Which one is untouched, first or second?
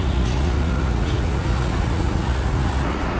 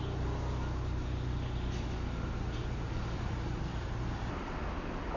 second